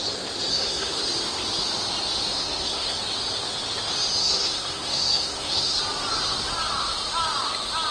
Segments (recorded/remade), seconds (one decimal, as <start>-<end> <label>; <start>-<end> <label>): 0.0-0.5 recorded; 0.5-1.0 remade; 1.0-2.4 recorded; 2.4-3.0 remade; 3.0-4.2 recorded; 4.2-5.8 remade; 5.8-7.9 recorded